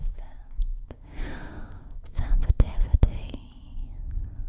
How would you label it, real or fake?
fake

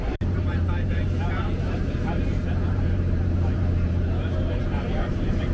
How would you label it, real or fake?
fake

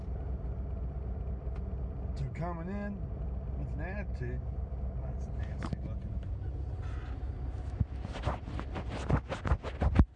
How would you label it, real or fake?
real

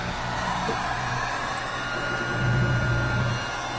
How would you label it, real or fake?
real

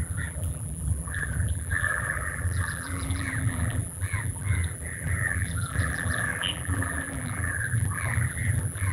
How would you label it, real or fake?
fake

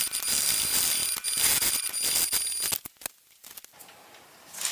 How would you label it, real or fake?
real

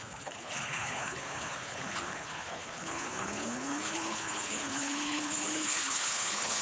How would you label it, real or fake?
fake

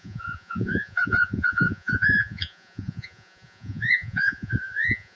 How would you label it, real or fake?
fake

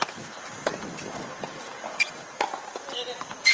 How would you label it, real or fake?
real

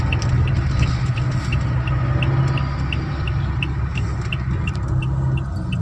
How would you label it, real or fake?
real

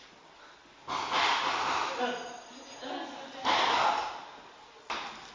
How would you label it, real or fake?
real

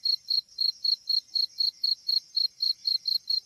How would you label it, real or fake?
fake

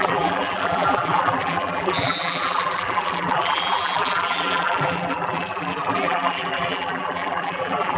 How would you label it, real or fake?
fake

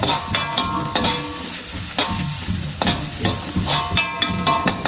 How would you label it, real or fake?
real